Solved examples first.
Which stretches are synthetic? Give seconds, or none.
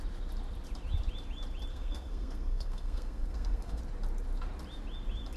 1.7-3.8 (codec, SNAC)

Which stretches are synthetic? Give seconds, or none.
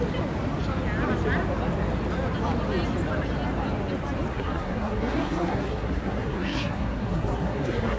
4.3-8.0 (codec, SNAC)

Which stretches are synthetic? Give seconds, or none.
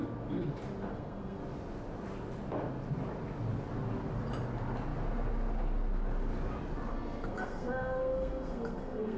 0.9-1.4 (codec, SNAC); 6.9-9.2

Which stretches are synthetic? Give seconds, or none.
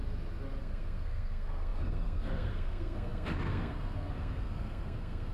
0.6-5.3 (codec, SNAC)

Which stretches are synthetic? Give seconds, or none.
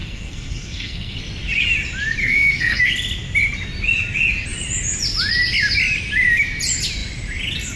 0.0-1.2 (codec, SNAC); 2.2-2.8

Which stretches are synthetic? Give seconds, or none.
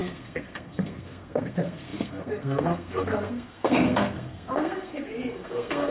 0.0-5.9 (codec, SNAC)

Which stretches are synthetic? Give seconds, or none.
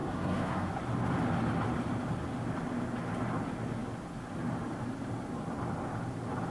0.0-0.7 (codec, SNAC)